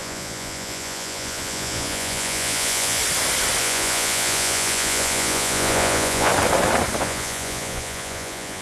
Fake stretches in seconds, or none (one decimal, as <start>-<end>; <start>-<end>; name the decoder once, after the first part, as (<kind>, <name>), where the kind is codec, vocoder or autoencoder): 0.0-3.0 (vocoder, Vocos); 3.6-6.3; 7.0-8.6